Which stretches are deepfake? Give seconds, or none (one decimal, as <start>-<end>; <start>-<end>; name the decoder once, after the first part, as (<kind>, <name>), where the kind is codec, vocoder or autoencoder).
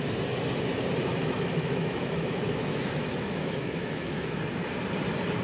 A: 1.2-4.4 (autoencoder, DAC-VAE)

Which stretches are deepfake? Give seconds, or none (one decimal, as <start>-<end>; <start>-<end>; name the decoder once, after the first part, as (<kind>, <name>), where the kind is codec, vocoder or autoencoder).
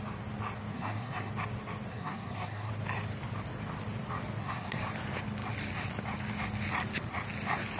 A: 0.7-1.3 (codec, SNAC); 1.9-2.7; 4.4-4.9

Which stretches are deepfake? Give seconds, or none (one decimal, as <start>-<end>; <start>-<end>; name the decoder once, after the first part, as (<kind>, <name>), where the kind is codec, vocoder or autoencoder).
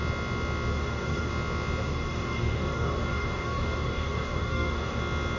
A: 0.7-1.3 (codec, DAC); 1.8-5.0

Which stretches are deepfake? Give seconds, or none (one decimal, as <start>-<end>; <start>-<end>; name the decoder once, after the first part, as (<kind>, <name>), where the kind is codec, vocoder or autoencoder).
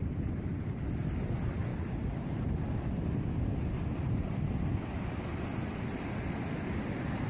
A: none